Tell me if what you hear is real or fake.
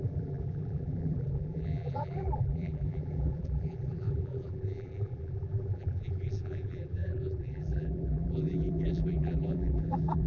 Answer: fake